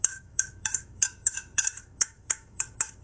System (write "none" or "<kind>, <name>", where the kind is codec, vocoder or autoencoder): autoencoder, DAC-VAE